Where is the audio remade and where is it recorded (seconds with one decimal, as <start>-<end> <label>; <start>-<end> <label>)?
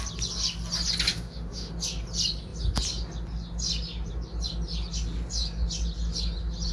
0.0-1.1 recorded; 1.1-1.7 remade; 1.7-6.7 recorded